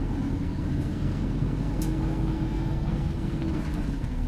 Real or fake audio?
fake